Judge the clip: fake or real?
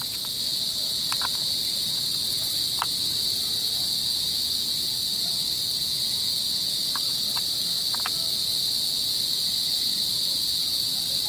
real